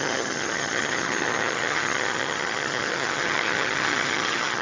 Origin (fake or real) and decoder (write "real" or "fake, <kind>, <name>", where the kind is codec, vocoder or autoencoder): fake, vocoder, HiFi-GAN